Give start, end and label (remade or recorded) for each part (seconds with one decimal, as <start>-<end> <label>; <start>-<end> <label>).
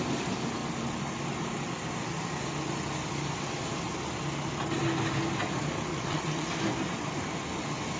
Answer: 0.0-5.9 recorded; 5.9-6.5 remade; 6.5-8.0 recorded